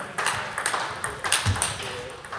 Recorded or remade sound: recorded